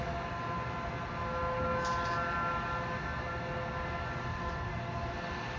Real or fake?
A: real